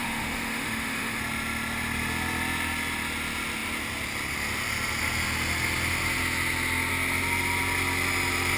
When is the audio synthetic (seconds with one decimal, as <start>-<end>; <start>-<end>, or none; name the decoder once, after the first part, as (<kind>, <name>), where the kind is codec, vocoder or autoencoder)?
0.0-1.2 (autoencoder, DAC-VAE)